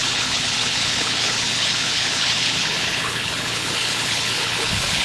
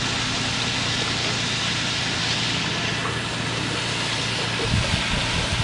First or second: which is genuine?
second